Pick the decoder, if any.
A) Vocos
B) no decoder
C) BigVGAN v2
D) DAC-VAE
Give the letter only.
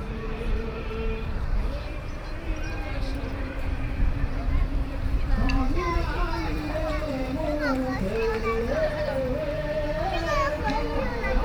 C